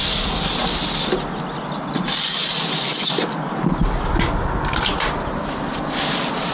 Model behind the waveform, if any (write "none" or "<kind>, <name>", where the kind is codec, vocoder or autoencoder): none